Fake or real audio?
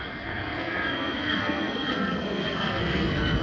fake